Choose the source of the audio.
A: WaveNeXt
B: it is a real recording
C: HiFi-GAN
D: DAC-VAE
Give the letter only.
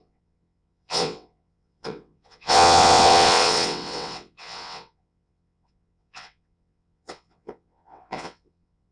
A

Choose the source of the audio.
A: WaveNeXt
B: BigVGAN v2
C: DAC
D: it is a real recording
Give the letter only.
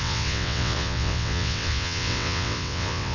A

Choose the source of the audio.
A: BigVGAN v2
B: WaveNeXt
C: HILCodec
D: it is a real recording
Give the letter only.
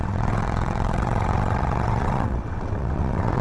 B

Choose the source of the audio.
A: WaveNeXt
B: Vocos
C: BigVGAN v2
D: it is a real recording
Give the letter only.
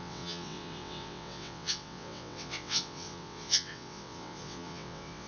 A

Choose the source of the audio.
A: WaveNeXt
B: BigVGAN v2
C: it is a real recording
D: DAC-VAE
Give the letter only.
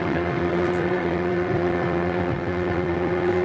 A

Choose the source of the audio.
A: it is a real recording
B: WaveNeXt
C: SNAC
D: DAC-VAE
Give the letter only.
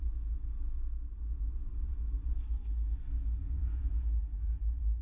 A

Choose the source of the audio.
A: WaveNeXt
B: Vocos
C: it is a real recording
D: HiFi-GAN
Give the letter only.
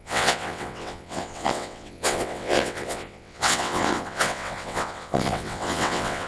A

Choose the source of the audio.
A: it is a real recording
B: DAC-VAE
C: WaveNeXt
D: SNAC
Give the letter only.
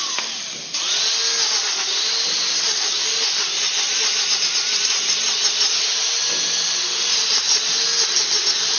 A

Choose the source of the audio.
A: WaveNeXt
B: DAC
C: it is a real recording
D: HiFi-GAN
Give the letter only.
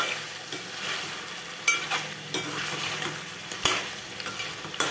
C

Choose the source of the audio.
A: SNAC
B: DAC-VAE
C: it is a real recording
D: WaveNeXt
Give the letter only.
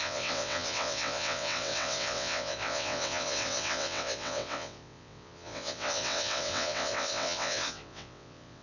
D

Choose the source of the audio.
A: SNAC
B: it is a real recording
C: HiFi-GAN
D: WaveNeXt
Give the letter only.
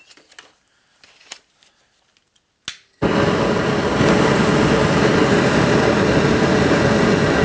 B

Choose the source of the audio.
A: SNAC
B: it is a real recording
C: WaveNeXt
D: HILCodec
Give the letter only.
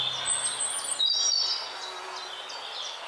B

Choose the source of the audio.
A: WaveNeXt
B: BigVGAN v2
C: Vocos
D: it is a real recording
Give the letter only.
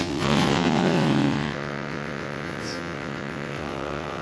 A